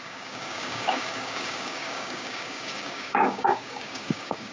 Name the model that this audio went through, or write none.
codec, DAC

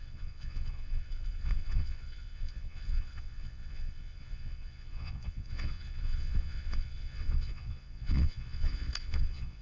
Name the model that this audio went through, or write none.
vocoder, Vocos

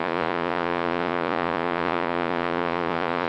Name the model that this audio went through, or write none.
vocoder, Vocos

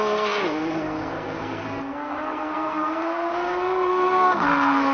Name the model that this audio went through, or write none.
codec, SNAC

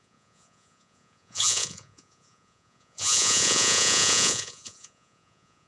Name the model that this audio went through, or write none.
vocoder, Vocos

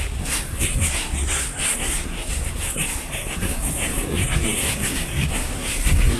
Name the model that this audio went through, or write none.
codec, SNAC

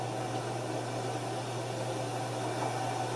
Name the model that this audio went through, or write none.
none